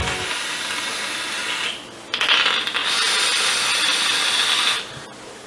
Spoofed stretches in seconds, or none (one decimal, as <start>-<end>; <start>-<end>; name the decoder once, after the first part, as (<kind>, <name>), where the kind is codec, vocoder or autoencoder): none